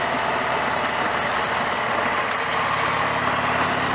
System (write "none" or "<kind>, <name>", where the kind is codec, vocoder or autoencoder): none